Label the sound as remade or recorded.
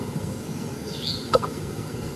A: remade